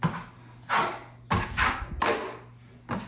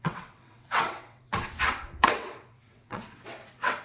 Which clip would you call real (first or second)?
first